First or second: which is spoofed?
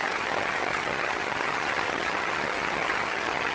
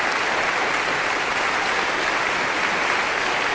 first